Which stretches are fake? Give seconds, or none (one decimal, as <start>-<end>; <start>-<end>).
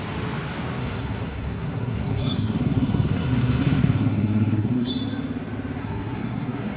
0.8-4.9; 5.8-6.8